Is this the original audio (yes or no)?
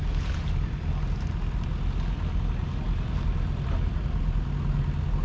yes